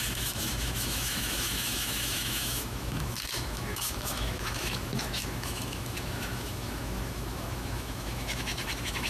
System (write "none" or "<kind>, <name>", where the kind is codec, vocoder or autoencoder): autoencoder, DAC-VAE